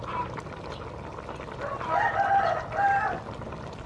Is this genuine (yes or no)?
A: yes